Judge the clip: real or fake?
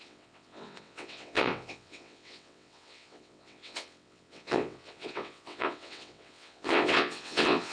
fake